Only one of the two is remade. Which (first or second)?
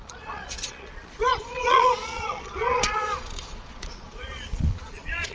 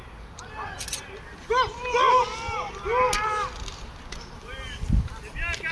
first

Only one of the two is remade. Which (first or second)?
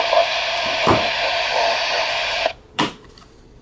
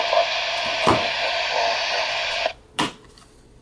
first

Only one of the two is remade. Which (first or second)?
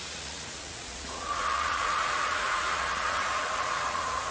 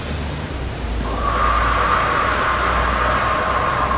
first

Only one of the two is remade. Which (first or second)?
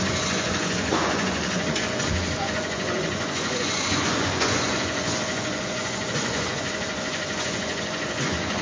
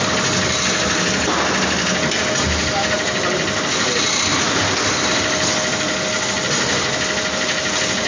first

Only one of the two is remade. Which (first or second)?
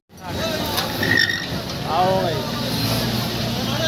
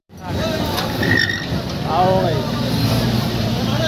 second